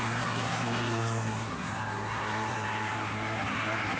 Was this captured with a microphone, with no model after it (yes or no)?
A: no